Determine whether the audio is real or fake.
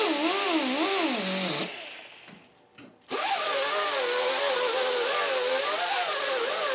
real